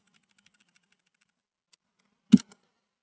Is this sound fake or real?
real